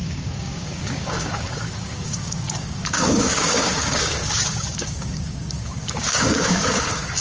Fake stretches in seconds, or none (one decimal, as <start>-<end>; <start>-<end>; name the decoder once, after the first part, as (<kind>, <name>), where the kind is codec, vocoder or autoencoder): 0.0-7.2 (codec, DAC)